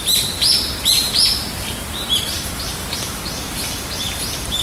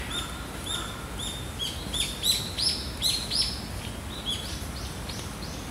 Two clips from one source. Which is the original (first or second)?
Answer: second